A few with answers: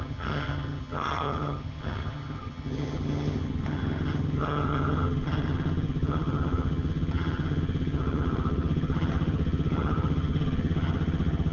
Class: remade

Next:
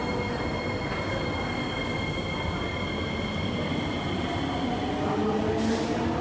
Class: recorded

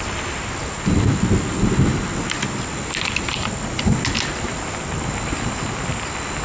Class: recorded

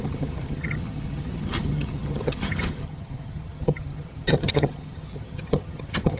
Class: remade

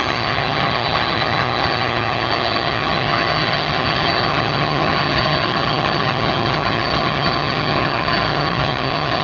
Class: remade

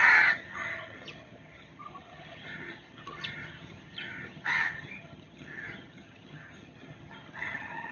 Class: remade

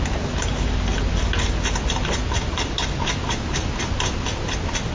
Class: recorded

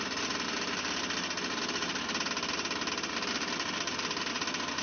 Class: recorded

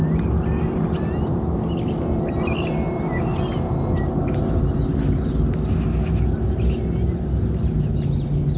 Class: recorded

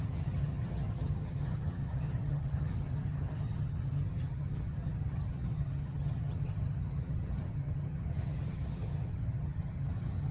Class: remade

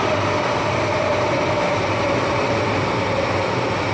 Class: recorded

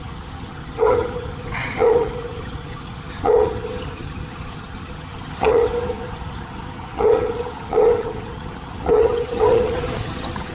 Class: remade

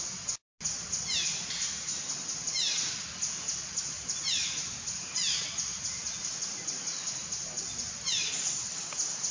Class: recorded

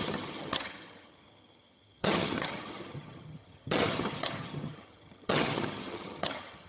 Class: remade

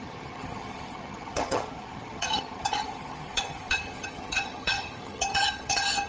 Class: remade